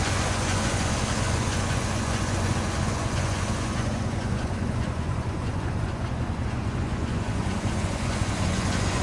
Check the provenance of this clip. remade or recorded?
remade